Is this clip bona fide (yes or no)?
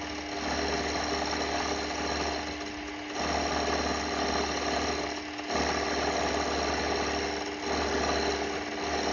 yes